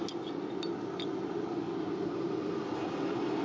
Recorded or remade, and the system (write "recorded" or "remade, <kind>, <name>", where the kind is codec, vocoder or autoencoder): recorded